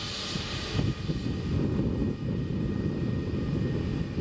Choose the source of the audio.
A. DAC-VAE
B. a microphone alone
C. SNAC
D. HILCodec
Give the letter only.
B